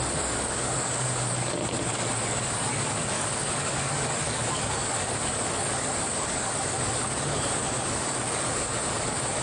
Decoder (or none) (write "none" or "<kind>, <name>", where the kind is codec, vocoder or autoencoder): codec, DAC